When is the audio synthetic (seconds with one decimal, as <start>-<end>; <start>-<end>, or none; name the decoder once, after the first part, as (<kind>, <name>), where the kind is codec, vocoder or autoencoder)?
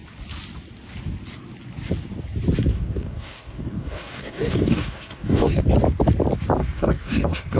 2.7-5.6 (codec, DAC); 6.6-7.6